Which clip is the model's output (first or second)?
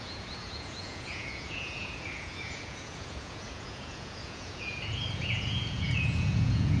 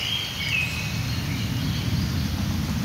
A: first